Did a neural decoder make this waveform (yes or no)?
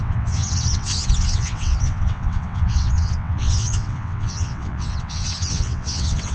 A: yes